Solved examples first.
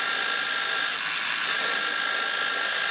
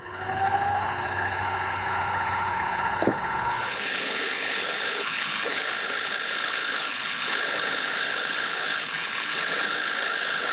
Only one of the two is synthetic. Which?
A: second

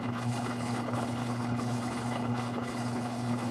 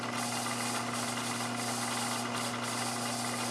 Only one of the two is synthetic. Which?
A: first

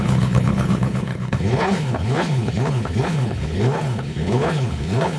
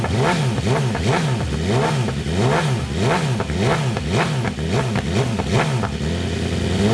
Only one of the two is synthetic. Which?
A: first